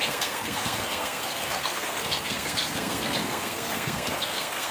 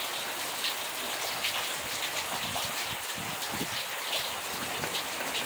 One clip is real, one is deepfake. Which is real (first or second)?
second